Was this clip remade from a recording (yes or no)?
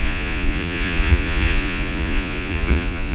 yes